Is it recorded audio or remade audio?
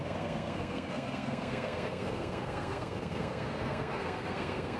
remade